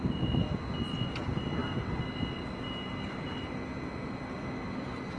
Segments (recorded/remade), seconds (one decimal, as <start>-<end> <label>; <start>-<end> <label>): 0.0-5.2 recorded